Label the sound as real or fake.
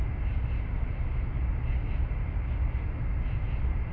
real